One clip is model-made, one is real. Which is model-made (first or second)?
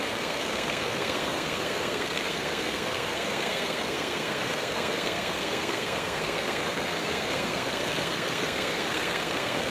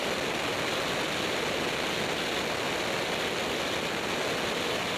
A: first